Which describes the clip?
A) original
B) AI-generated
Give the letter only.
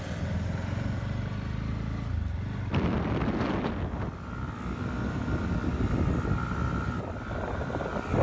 A